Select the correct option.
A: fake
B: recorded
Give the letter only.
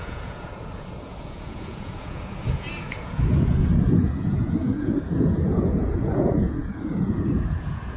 A